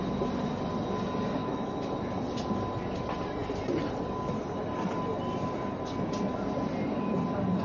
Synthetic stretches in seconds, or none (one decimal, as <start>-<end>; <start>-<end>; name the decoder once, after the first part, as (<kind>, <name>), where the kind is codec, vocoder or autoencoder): 1.4-1.9 (autoencoder, DAC-VAE)